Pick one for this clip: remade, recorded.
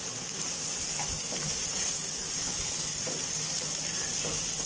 recorded